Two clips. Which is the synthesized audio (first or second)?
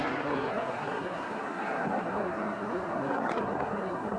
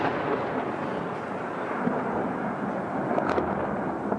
first